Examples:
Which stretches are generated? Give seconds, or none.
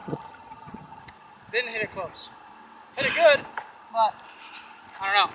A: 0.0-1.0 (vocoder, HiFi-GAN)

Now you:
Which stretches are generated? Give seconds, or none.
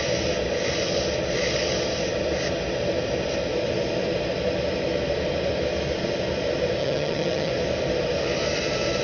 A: 6.8-7.5 (vocoder, HiFi-GAN)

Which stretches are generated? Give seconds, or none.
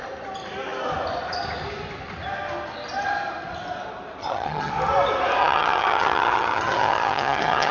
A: 4.2-4.7 (vocoder, HiFi-GAN); 5.4-7.7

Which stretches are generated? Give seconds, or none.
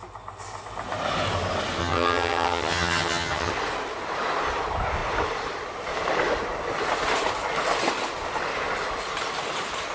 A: 1.8-3.5 (vocoder, HiFi-GAN)